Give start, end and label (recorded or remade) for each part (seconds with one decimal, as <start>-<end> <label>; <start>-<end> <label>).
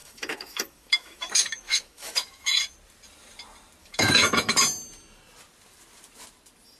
0.0-2.6 remade; 2.6-3.8 recorded; 3.8-4.6 remade; 4.6-6.8 recorded